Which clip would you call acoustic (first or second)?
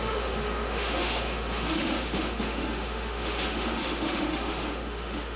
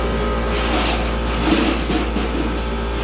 second